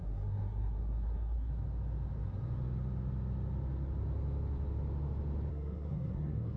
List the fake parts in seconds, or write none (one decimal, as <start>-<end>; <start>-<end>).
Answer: 0.0-1.5; 5.5-6.6